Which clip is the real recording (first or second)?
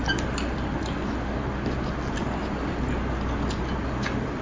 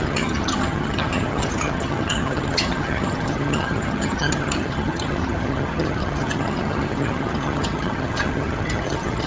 first